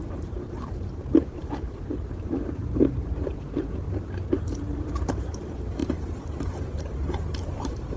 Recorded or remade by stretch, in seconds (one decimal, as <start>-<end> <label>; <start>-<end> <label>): 0.0-5.8 remade; 5.8-6.9 recorded; 6.9-8.0 remade